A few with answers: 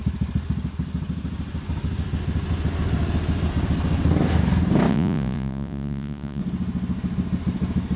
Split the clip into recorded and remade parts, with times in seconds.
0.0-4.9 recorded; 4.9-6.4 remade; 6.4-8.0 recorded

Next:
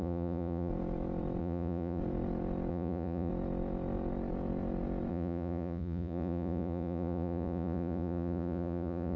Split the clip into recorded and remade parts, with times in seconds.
0.0-0.7 remade; 0.7-1.4 recorded; 1.4-2.0 remade; 2.0-2.7 recorded; 2.7-3.3 remade; 3.3-5.1 recorded; 5.1-9.2 remade

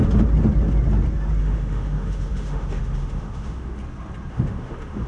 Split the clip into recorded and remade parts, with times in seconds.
0.0-1.4 recorded; 1.4-3.8 remade; 3.8-4.3 recorded; 4.3-5.1 remade

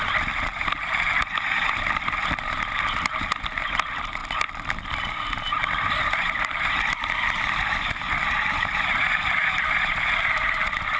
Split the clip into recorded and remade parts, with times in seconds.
0.0-0.5 recorded; 0.5-2.7 remade; 2.7-5.6 recorded; 5.6-9.9 remade; 9.9-11.0 recorded

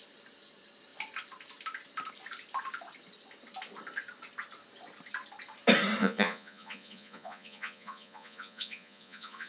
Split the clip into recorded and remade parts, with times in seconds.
0.0-6.0 recorded; 6.0-9.5 remade

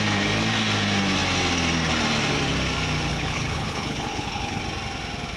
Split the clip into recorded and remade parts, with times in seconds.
0.0-3.1 recorded; 3.1-4.6 remade; 4.6-5.4 recorded

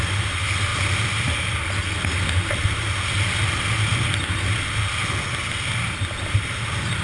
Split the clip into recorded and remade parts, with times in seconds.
0.0-7.0 recorded